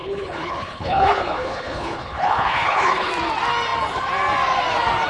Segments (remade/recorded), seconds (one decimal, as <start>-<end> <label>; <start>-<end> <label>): 0.0-3.1 remade; 3.1-5.1 recorded